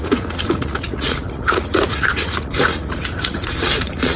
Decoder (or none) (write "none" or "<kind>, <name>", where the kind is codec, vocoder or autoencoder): vocoder, Vocos